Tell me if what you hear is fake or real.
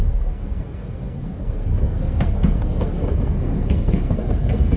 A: fake